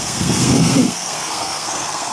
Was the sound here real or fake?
fake